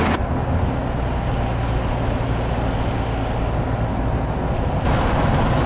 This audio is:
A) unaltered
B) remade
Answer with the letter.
A